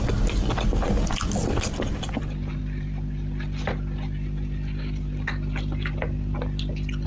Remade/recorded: recorded